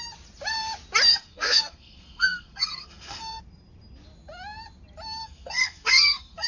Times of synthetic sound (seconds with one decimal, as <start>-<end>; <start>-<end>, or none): 1.1-3.4; 5.2-6.5